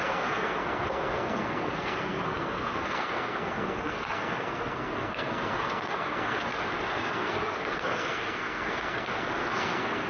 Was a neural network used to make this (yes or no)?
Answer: yes